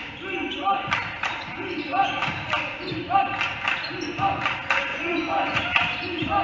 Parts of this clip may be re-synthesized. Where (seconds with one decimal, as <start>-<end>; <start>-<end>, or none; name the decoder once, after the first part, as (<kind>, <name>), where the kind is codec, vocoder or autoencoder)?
4.9-5.6 (vocoder, Vocos)